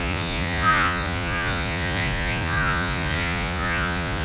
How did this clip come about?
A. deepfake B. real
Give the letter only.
A